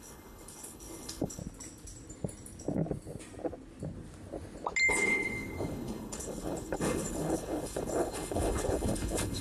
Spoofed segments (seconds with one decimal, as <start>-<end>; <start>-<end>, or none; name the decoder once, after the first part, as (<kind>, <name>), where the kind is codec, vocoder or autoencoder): 0.0-1.4 (codec, HILCodec); 4.9-9.4